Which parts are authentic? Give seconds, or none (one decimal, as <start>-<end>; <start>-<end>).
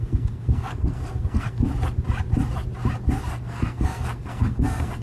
1.7-3.3